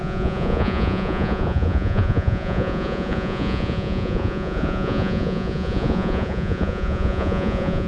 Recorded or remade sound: remade